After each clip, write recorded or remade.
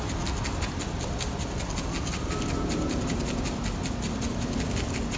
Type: recorded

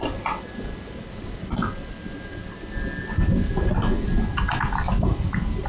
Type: recorded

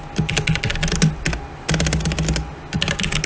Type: recorded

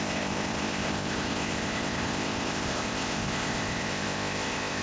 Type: remade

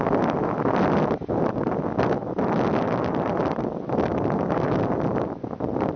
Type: recorded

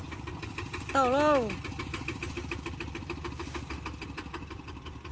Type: recorded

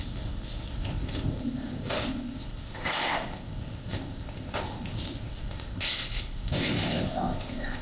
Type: remade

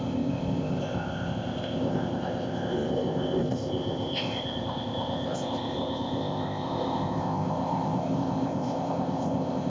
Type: remade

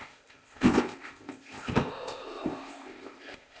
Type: remade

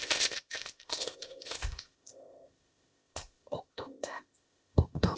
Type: remade